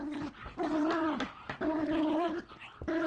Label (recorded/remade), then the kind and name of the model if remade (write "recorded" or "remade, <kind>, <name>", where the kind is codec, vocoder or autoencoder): remade, vocoder, BigVGAN v2